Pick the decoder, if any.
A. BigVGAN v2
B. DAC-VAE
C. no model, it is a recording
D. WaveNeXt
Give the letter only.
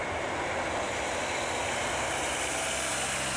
C